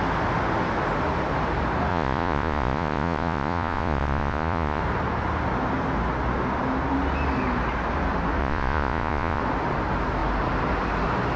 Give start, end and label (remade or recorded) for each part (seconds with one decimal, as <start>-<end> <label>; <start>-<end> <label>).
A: 0.0-1.9 recorded; 1.9-4.8 remade; 4.8-8.4 recorded; 8.4-9.4 remade; 9.4-11.4 recorded

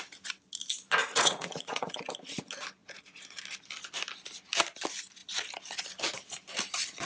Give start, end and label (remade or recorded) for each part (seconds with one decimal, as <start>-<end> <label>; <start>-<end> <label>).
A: 0.0-1.0 recorded; 1.0-2.1 remade; 2.1-2.8 recorded; 2.8-3.4 remade; 3.4-7.1 recorded

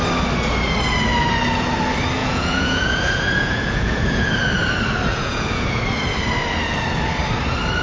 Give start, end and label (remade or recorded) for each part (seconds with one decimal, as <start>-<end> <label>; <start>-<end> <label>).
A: 0.0-2.2 recorded; 2.2-4.3 remade; 4.3-5.1 recorded; 5.1-5.8 remade; 5.8-7.8 recorded

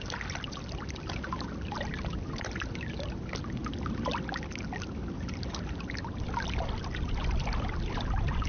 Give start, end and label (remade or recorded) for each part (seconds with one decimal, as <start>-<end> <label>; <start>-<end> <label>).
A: 0.0-8.5 recorded

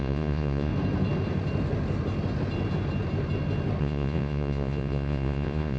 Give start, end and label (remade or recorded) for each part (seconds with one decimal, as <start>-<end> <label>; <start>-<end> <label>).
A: 0.0-0.7 remade; 0.7-3.8 recorded; 3.8-5.8 remade

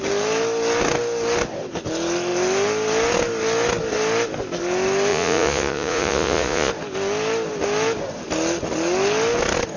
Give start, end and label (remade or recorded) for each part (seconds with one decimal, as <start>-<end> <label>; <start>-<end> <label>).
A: 0.0-5.1 recorded; 5.1-6.7 remade; 6.7-9.8 recorded

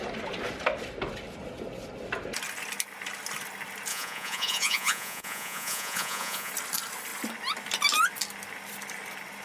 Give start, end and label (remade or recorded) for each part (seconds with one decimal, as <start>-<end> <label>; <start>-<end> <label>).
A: 0.0-3.9 recorded; 3.9-6.5 remade; 6.5-9.4 recorded

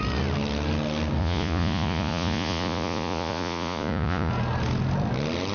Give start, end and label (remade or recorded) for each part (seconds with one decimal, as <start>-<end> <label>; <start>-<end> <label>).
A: 0.0-1.2 recorded; 1.2-4.3 remade; 4.3-5.5 recorded